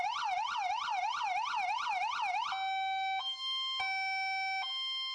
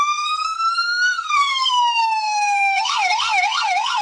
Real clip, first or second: first